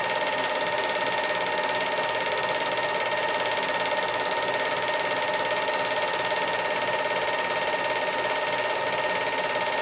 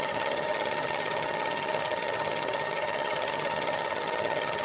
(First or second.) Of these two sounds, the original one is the first